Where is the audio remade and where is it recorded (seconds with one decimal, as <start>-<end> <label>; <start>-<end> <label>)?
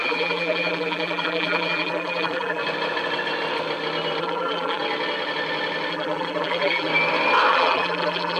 0.0-2.6 remade; 2.6-4.2 recorded; 4.2-4.8 remade; 4.8-5.9 recorded; 5.9-6.9 remade; 6.9-7.5 recorded; 7.5-8.4 remade